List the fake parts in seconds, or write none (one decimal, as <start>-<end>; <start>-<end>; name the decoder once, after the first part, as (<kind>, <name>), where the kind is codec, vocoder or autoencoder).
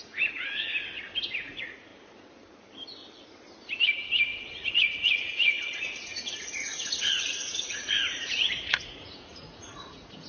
0.0-0.7 (vocoder, Vocos); 1.3-1.9; 4.5-10.3